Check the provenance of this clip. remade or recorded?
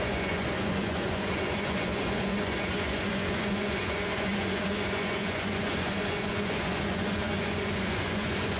remade